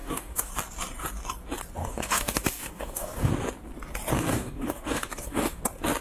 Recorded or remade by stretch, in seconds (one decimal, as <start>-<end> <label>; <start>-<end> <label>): 0.0-0.5 remade; 0.5-1.8 recorded; 1.8-3.3 remade; 3.3-4.3 recorded; 4.3-5.6 remade; 5.6-6.0 recorded